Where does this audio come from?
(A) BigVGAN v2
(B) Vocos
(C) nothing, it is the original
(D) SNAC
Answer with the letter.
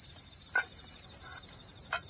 A